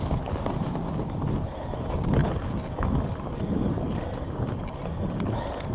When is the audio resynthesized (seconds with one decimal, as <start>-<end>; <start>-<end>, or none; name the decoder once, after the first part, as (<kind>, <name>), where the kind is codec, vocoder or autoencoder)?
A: none